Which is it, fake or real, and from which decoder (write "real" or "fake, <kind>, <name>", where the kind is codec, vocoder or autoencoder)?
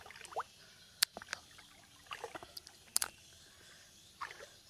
real